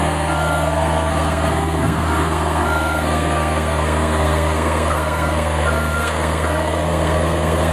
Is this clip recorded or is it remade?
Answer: remade